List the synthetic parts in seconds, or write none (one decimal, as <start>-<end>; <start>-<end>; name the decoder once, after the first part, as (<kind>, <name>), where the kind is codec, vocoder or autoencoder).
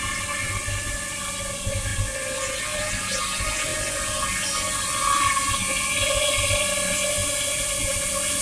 0.0-3.7 (vocoder, BigVGAN v2); 4.7-8.4